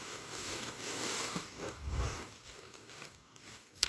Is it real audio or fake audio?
fake